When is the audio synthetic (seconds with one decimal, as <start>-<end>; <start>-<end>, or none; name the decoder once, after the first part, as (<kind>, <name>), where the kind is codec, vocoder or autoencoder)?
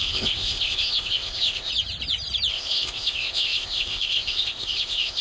0.0-1.7 (codec, ZipCodec); 2.5-5.2